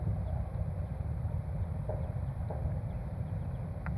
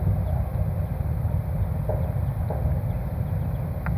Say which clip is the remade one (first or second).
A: first